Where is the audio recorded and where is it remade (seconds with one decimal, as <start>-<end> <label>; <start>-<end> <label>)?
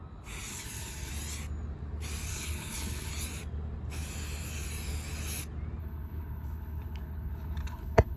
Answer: 0.0-0.5 recorded; 0.5-1.1 remade; 1.1-2.3 recorded; 2.3-3.1 remade; 3.1-5.8 recorded; 5.8-8.2 remade